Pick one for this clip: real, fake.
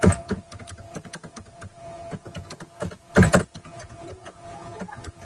fake